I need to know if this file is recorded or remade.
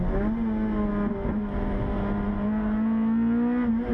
recorded